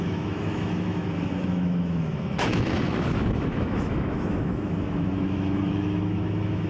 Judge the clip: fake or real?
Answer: fake